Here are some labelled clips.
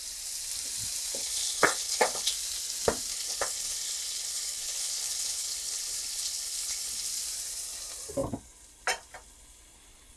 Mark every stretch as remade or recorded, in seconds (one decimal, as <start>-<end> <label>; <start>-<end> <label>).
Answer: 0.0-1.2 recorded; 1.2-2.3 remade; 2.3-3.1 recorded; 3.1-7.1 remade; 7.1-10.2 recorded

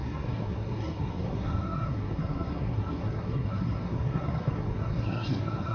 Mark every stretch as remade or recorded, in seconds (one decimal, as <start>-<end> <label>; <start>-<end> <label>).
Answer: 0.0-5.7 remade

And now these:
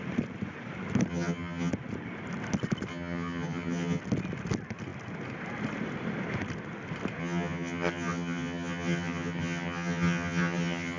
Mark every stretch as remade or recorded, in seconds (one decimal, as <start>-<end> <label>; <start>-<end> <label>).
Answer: 0.0-1.1 recorded; 1.1-1.7 remade; 1.7-2.9 recorded; 2.9-4.0 remade; 4.0-7.2 recorded; 7.2-11.0 remade

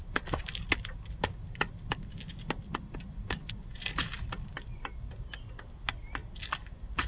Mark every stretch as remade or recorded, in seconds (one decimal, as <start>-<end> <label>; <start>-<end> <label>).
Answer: 0.0-7.1 recorded

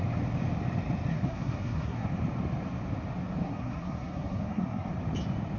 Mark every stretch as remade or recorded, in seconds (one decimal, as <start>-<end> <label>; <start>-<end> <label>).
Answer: 0.0-1.1 recorded; 1.1-2.1 remade; 2.1-3.4 recorded; 3.4-4.9 remade; 4.9-5.6 recorded

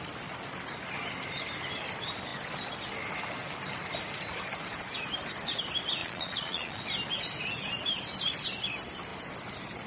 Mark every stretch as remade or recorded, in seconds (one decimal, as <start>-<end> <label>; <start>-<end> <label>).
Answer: 0.0-6.0 recorded; 6.0-6.8 remade; 6.8-9.9 recorded

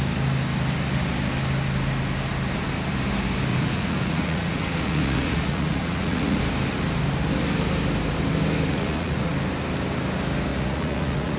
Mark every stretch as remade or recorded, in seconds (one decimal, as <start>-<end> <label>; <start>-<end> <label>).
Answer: 0.0-3.5 recorded; 3.5-6.4 remade; 6.4-8.7 recorded; 8.7-9.3 remade; 9.3-10.5 recorded; 10.5-11.4 remade